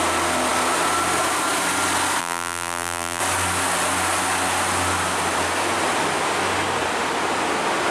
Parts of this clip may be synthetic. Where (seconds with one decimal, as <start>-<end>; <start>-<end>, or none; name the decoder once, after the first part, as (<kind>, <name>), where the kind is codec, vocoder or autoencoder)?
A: 2.2-3.2 (vocoder, BigVGAN v2)